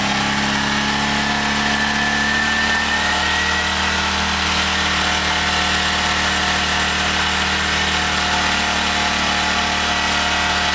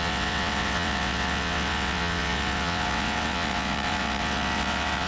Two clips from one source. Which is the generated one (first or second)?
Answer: second